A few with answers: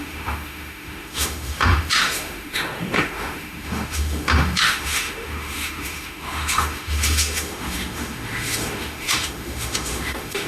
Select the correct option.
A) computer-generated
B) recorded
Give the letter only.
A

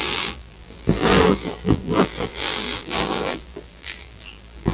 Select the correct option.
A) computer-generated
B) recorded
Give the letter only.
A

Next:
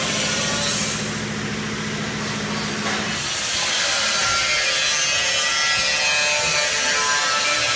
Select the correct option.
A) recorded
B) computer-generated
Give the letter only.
A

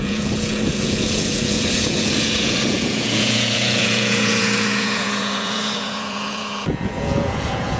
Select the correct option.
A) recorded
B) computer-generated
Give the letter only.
B